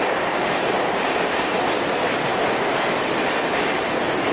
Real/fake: real